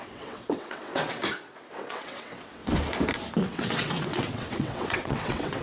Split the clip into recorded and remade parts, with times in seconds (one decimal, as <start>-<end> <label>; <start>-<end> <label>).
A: 0.0-1.2 remade; 1.2-1.7 recorded; 1.7-2.6 remade; 2.6-3.4 recorded; 3.4-5.6 remade